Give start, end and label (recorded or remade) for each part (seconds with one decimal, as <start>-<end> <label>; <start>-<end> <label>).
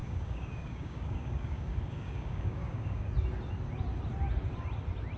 0.0-3.1 remade; 3.1-5.2 recorded